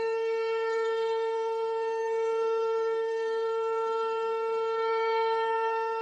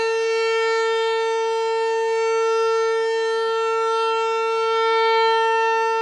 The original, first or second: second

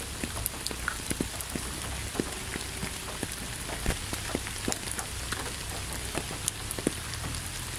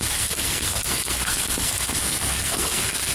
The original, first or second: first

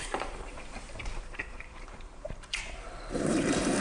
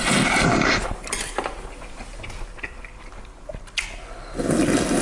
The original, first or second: second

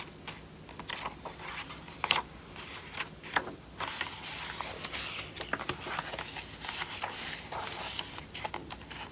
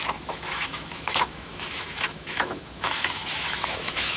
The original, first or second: first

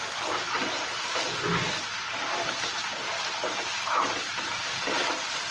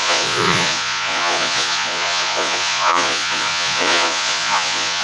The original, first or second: first